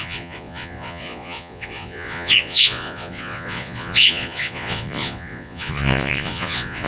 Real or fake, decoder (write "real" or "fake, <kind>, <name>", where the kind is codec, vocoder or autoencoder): fake, vocoder, Vocos